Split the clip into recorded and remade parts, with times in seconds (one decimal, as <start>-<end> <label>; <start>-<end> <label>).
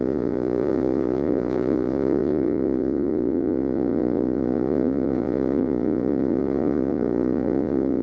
0.0-8.0 remade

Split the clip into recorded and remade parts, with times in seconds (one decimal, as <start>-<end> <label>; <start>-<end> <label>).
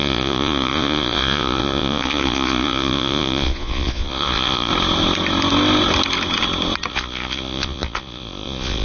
0.0-4.7 remade; 4.7-6.9 recorded; 6.9-8.8 remade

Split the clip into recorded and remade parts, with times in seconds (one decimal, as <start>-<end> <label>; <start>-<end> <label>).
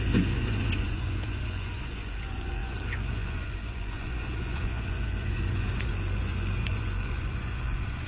0.0-8.1 remade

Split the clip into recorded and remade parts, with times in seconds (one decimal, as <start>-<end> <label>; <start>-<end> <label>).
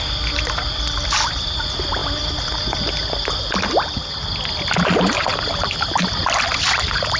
0.0-7.2 recorded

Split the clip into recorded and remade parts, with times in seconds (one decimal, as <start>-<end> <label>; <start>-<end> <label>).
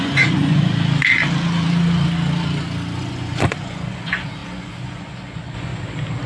0.0-0.7 remade; 0.7-3.0 recorded; 3.0-5.7 remade; 5.7-6.3 recorded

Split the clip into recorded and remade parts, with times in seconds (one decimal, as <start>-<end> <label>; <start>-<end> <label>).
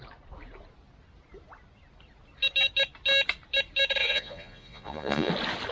0.0-4.0 recorded; 4.0-5.3 remade; 5.3-5.7 recorded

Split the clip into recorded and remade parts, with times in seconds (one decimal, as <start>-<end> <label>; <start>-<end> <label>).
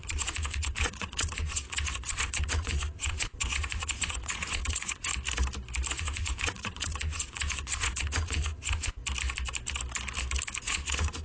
0.0-5.1 remade; 5.1-5.9 recorded; 5.9-9.0 remade; 9.0-10.6 recorded; 10.6-11.2 remade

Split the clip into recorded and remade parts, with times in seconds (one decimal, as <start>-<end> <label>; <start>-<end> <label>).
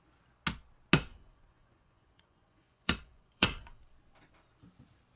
0.0-1.1 recorded; 1.1-3.8 remade; 3.8-5.2 recorded